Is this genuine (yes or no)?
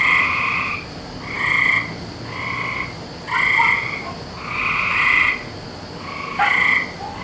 yes